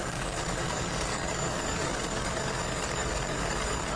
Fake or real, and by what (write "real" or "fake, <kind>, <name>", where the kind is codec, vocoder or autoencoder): fake, codec, DAC